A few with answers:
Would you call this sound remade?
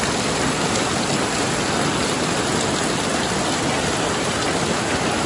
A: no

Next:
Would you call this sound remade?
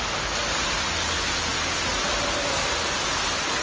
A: no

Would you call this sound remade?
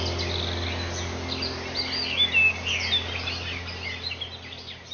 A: no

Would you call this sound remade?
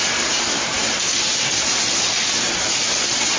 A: yes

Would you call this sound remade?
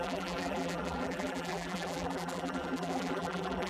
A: yes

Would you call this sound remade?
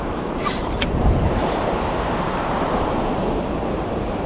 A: yes